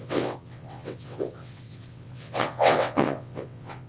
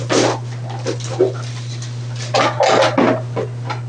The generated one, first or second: first